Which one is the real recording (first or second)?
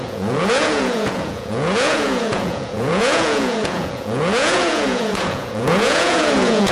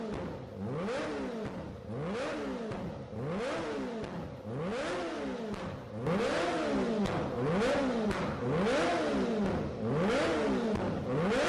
second